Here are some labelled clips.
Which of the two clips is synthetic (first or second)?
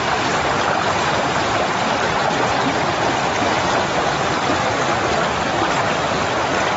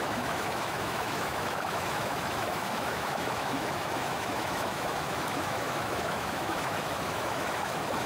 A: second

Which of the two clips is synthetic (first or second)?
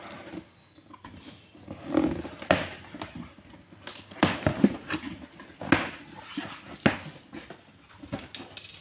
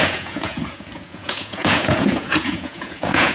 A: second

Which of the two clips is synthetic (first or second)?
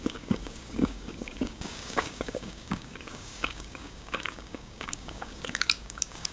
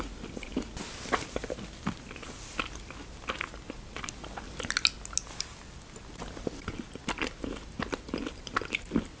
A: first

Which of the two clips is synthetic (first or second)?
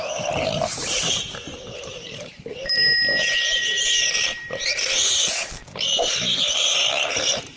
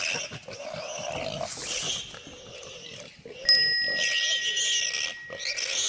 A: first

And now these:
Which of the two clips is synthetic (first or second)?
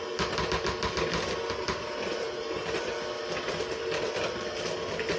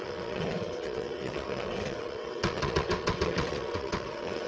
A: second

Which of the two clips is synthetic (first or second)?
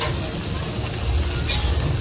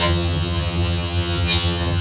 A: second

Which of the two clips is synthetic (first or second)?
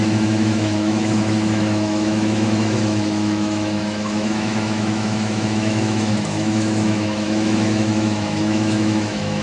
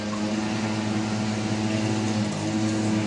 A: first